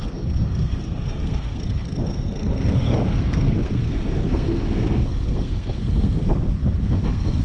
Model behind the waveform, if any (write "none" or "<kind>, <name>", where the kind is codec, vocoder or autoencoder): codec, SNAC